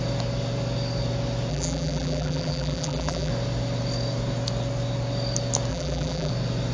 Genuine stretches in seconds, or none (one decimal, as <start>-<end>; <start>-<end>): 0.0-1.5; 3.3-5.7; 6.3-6.7